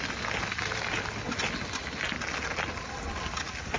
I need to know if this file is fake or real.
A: real